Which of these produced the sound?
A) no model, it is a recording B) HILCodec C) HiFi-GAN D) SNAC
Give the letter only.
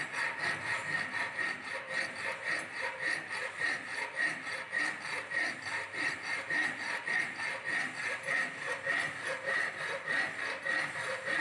A